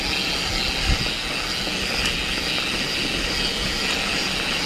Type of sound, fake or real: real